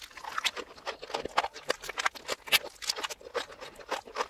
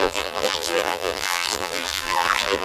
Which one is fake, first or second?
second